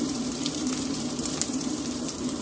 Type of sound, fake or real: fake